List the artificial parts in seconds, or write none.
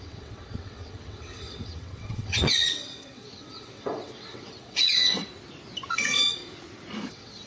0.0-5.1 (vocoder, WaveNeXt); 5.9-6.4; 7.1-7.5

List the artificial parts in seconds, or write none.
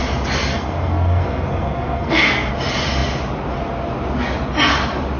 0.5-2.5 (codec, SNAC)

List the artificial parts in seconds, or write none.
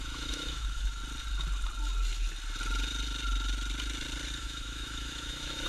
0.0-1.0 (autoencoder, DAC-VAE); 4.4-5.7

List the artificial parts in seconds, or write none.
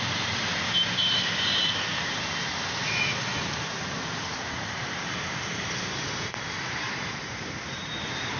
0.0-8.4 (vocoder, BigVGAN v2)